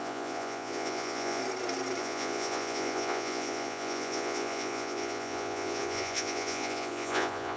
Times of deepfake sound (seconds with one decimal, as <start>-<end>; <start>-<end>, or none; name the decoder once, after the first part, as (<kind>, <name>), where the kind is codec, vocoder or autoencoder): 0.0-1.4 (vocoder, Vocos); 2.0-7.6